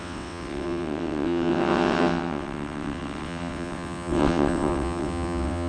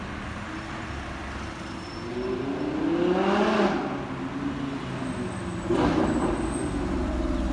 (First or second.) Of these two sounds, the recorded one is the second